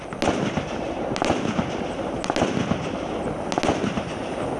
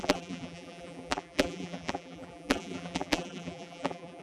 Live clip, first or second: first